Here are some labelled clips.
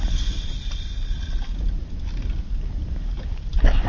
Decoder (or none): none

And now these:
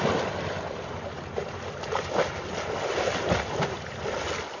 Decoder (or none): none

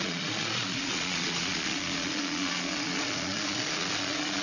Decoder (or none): vocoder, Vocos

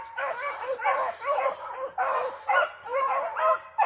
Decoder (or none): none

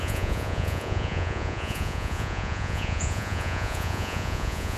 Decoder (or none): vocoder, Vocos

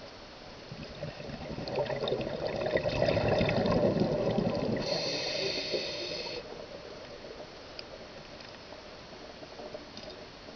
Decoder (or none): none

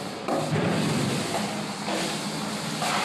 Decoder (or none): none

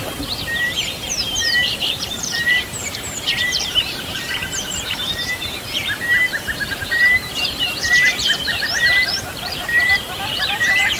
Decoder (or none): vocoder, BigVGAN v2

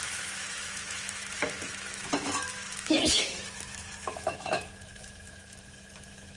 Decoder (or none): autoencoder, DAC-VAE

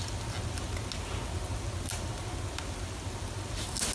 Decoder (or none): none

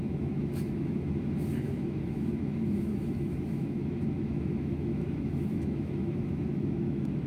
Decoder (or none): autoencoder, DAC-VAE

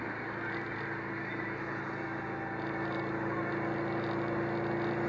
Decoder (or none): none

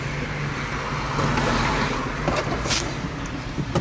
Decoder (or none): none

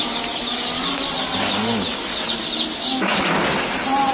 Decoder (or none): none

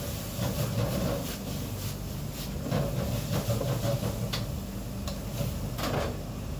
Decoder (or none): none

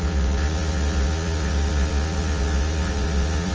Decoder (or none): vocoder, Vocos